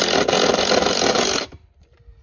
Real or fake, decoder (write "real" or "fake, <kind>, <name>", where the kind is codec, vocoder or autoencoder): real